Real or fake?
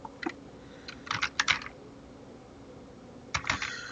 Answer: real